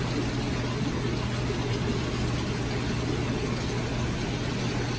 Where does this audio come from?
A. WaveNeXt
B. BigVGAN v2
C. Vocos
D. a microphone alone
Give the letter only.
D